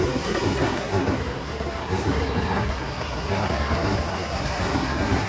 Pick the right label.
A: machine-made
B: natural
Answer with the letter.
A